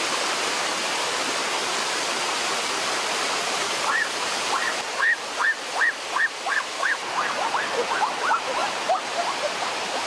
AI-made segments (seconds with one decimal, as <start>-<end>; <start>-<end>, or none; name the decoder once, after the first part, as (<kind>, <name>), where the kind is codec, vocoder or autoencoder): 1.4-2.4 (vocoder, BigVGAN v2); 8.6-9.7